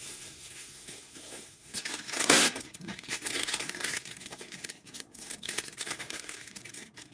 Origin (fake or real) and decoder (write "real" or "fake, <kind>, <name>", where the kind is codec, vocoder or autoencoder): fake, codec, SNAC